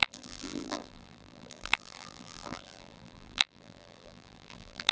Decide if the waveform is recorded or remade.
remade